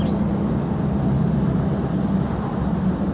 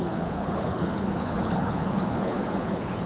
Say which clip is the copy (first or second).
second